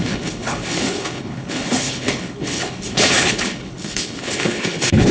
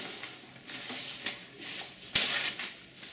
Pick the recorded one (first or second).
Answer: second